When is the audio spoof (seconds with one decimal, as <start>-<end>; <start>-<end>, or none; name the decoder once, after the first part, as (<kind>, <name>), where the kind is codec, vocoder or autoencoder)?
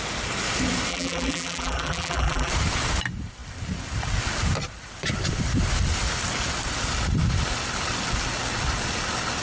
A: 0.9-2.5 (vocoder, BigVGAN v2)